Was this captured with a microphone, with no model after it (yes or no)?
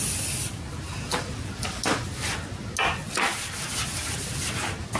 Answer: yes